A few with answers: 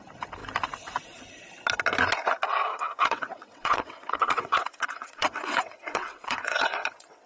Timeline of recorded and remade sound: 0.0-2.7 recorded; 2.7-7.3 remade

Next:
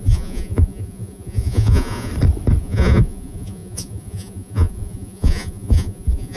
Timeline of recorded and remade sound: 0.0-2.1 remade; 2.1-2.6 recorded; 2.6-6.4 remade

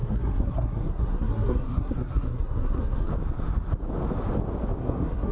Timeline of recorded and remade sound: 0.0-3.1 remade; 3.1-4.8 recorded; 4.8-5.3 remade

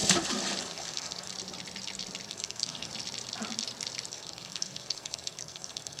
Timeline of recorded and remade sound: 0.0-0.6 recorded; 0.6-1.3 remade; 1.3-2.3 recorded; 2.3-2.9 remade; 2.9-4.1 recorded; 4.1-6.0 remade

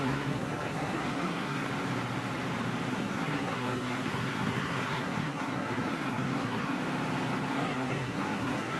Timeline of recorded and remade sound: 0.0-1.7 remade; 1.7-2.9 recorded; 2.9-6.8 remade; 6.8-7.5 recorded; 7.5-8.8 remade